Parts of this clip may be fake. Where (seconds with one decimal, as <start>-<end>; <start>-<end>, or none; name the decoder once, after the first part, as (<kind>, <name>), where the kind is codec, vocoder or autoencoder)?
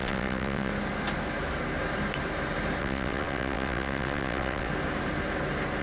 0.0-0.7 (vocoder, WaveNeXt); 2.8-4.7